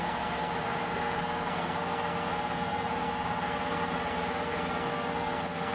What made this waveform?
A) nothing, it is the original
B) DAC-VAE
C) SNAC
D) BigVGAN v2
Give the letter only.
C